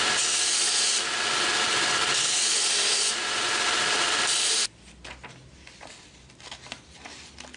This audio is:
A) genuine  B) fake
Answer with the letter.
B